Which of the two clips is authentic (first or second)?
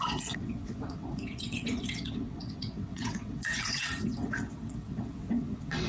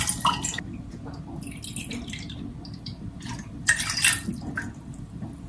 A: second